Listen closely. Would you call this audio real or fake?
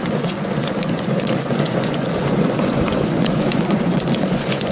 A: fake